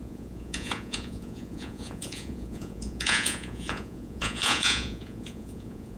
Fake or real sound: fake